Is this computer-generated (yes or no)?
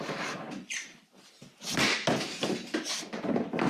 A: no